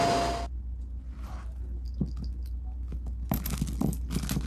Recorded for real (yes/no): yes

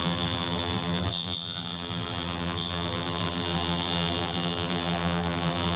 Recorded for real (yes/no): no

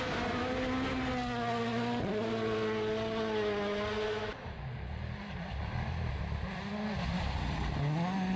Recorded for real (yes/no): yes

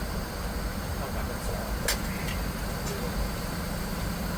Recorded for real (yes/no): yes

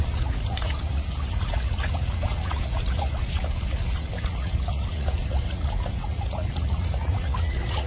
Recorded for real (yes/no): no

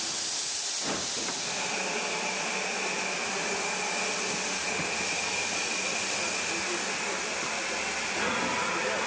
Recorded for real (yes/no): yes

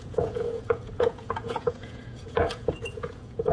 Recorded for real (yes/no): no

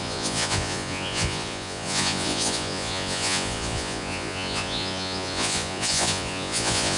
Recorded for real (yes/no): no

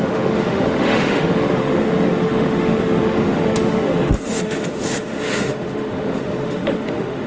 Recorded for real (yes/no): no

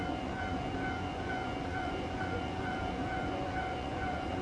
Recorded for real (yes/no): no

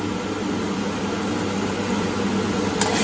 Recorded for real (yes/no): yes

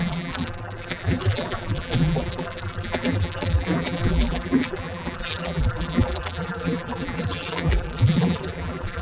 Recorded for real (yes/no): no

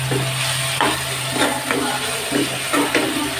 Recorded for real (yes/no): yes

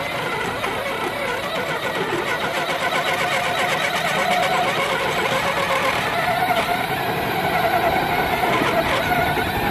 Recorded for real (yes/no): yes